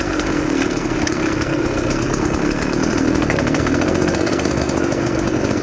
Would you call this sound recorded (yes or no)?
no